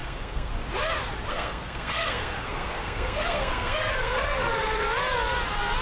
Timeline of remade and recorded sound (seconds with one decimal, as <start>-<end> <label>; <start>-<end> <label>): 0.0-0.5 remade; 0.5-1.3 recorded; 1.3-4.5 remade; 4.5-5.8 recorded